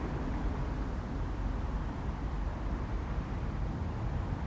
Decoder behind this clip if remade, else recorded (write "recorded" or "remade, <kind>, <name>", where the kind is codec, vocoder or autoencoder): recorded